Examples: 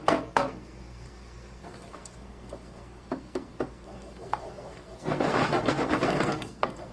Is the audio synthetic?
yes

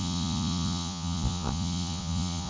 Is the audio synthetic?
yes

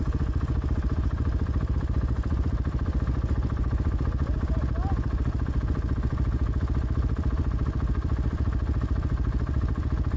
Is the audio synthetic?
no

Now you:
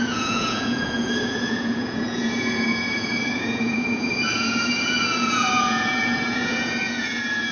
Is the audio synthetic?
yes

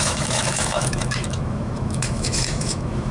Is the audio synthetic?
yes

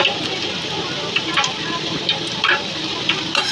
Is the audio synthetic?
yes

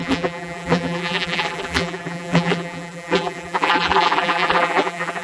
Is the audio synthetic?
yes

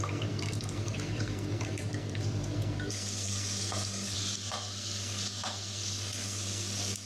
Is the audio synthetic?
yes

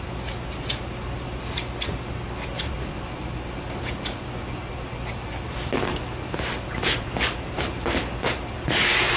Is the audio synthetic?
no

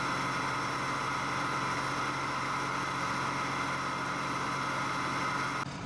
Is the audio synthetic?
no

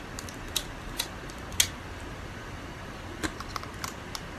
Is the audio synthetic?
no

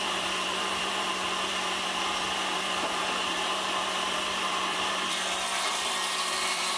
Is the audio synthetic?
yes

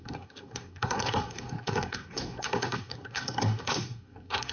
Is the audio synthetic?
yes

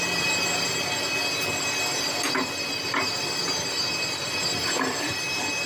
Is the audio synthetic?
no